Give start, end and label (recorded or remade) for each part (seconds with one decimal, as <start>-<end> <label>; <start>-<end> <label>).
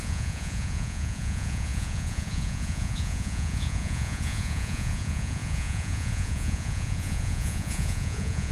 0.0-8.5 remade